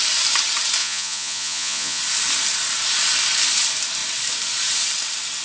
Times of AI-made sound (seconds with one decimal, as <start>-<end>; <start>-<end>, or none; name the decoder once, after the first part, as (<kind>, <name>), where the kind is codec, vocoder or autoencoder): 0.8-2.0 (vocoder, Vocos)